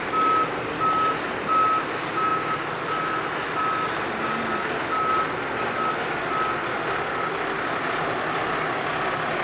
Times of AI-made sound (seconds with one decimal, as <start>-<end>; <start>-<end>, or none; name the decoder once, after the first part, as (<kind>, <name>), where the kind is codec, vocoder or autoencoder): none